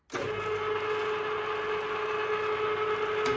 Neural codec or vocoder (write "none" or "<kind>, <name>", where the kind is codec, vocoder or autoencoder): none